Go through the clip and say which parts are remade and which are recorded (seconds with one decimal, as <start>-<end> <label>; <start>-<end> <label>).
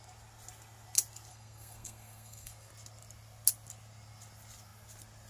0.0-1.3 recorded; 1.3-2.7 remade; 2.7-5.3 recorded